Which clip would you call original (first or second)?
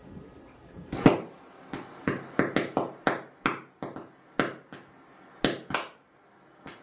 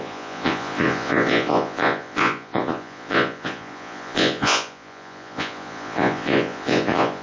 first